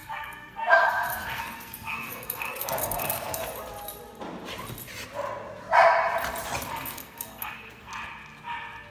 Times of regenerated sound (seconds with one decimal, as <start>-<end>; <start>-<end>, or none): 0.0-3.4; 6.7-7.9